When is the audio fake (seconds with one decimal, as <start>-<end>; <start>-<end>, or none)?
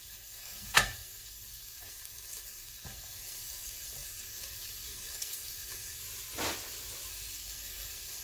0.0-6.0; 7.1-8.2